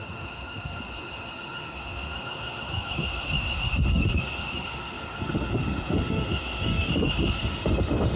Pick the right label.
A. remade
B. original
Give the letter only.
A